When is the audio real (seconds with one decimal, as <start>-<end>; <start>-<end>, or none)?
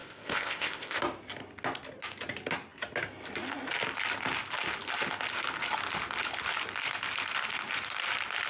1.0-8.5